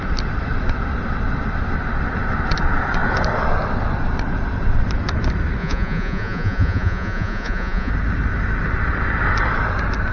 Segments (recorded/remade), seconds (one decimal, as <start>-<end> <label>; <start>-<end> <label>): 0.0-5.6 recorded; 5.6-7.9 remade; 7.9-10.1 recorded